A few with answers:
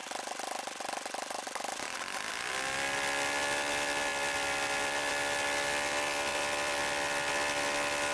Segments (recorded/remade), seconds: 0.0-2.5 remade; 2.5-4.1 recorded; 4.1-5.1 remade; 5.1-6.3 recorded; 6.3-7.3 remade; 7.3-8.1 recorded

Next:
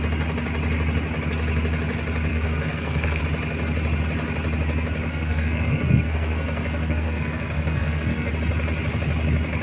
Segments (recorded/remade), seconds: 0.0-2.3 recorded; 2.3-3.2 remade; 3.2-5.1 recorded; 5.1-8.3 remade; 8.3-9.6 recorded

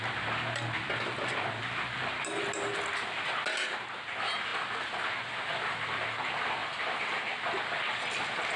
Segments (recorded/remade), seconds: 0.0-8.6 recorded

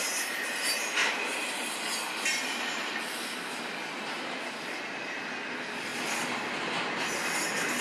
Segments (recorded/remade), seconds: 0.0-1.0 recorded; 1.0-4.8 remade; 4.8-5.9 recorded; 5.9-6.5 remade; 6.5-7.8 recorded

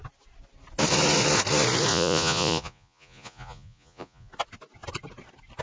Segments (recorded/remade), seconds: 0.0-1.9 recorded; 1.9-4.3 remade; 4.3-5.6 recorded

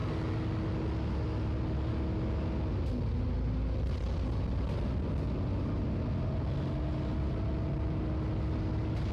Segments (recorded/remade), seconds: 0.0-9.1 recorded

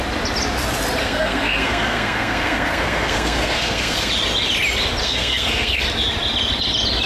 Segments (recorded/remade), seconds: 0.0-1.0 recorded; 1.0-4.1 remade; 4.1-5.0 recorded; 5.0-5.8 remade; 5.8-7.1 recorded

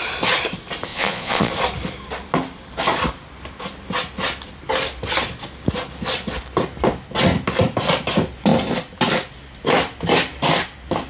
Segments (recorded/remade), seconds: 0.0-0.9 recorded; 0.9-1.5 remade; 1.5-11.1 recorded